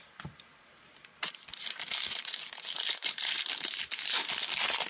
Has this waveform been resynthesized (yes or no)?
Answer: no